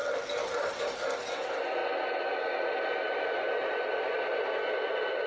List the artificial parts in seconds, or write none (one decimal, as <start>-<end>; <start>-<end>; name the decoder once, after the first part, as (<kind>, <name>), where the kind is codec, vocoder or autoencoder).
0.0-0.8 (vocoder, BigVGAN v2); 1.8-5.3